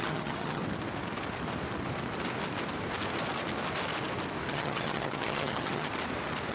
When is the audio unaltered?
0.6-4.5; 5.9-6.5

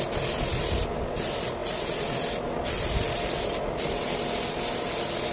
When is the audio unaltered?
0.0-5.3

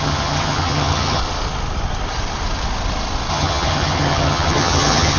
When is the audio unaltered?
1.2-3.3

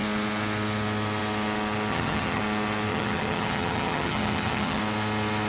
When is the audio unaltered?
0.0-1.9; 2.4-2.9; 4.8-5.5